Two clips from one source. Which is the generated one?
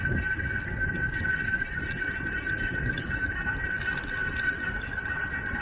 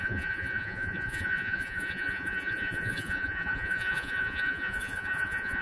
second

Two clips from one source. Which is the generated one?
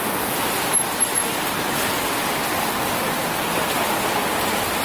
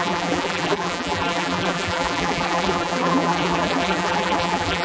second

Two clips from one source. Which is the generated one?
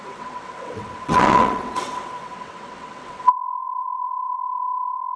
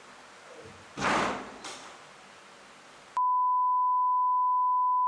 first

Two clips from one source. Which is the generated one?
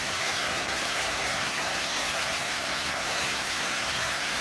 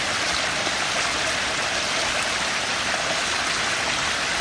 first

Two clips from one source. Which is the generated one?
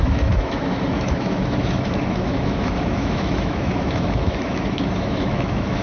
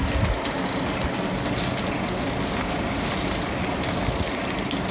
first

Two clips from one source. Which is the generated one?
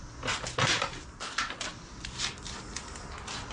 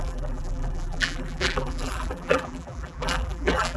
second